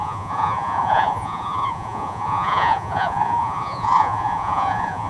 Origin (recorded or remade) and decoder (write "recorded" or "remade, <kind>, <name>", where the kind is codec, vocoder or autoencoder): remade, vocoder, Vocos